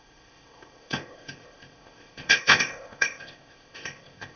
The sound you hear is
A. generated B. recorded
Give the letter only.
A